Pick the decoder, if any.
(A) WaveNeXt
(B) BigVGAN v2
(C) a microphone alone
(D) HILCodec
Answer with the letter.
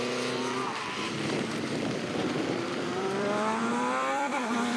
B